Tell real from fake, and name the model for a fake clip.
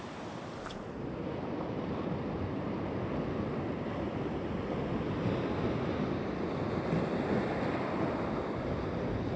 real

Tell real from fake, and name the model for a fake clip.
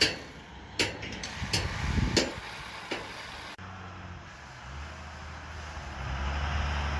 real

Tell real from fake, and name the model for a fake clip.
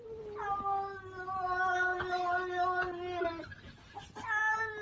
real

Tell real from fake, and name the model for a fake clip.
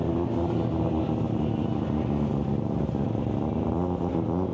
real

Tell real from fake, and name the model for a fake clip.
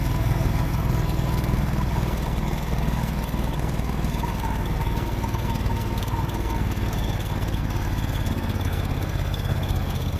fake, codec, SNAC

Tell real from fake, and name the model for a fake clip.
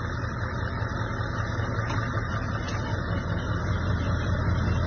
real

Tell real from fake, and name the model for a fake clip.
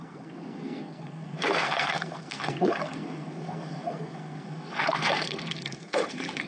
fake, codec, SNAC